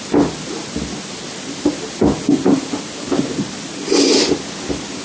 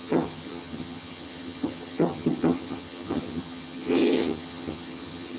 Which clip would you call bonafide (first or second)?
first